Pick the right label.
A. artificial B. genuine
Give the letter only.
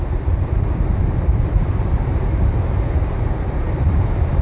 A